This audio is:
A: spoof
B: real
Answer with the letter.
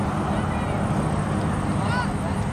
B